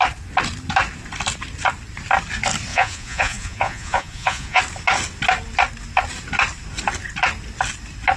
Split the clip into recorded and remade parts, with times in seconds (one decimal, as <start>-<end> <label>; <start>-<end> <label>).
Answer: 0.0-2.7 recorded; 2.7-4.6 remade; 4.6-8.2 recorded